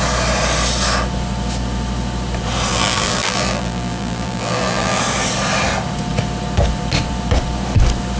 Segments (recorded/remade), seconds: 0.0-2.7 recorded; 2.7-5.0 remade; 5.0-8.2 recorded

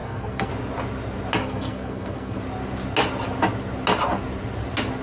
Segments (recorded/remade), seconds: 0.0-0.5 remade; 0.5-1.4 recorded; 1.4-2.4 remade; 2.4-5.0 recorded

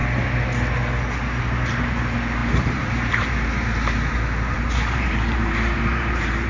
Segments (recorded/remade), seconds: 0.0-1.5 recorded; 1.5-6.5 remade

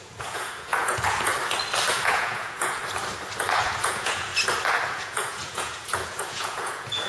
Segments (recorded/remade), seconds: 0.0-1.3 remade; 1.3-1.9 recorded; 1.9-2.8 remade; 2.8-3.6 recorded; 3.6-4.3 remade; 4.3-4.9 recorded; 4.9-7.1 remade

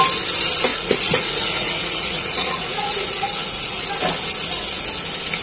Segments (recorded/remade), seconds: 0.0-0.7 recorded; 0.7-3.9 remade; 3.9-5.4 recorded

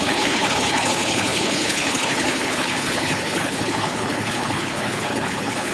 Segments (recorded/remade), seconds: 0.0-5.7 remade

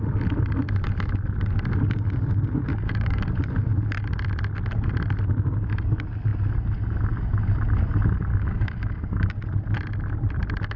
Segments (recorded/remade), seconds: 0.0-2.7 recorded; 2.7-3.2 remade; 3.2-8.3 recorded; 8.3-9.3 remade; 9.3-10.8 recorded